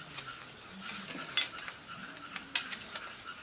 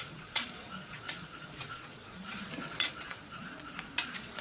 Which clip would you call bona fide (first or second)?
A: first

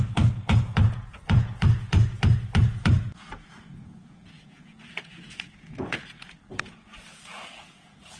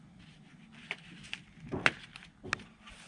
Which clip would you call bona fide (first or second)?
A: second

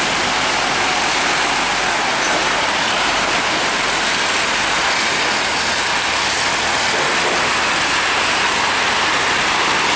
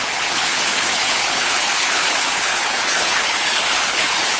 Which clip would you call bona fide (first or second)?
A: first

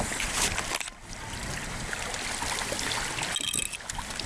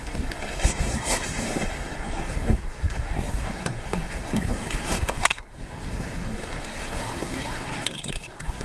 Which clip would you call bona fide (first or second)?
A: first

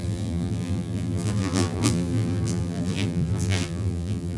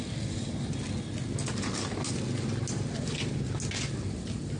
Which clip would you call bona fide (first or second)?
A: second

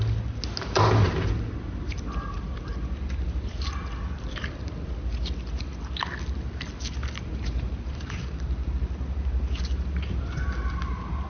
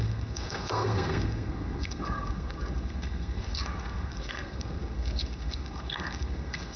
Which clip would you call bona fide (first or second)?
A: first